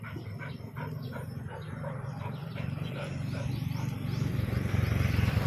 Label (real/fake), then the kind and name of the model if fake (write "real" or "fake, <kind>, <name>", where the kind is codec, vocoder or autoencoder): fake, vocoder, BigVGAN v2